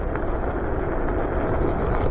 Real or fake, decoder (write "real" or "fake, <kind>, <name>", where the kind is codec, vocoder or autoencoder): real